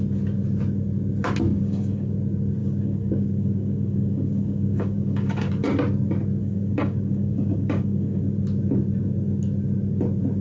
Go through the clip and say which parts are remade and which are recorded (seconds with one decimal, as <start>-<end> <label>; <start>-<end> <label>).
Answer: 0.0-1.5 recorded; 1.5-2.1 remade; 2.1-2.6 recorded; 2.6-5.5 remade; 5.5-6.4 recorded; 6.4-8.2 remade; 8.2-10.4 recorded